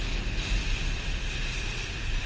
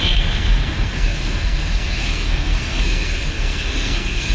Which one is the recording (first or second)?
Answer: first